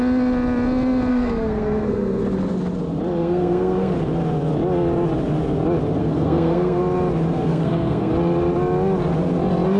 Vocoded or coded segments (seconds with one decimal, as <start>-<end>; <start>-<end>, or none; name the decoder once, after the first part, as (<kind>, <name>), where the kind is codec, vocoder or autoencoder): 1.1-2.2 (codec, SNAC); 3.2-3.9; 6.0-6.8; 7.5-8.1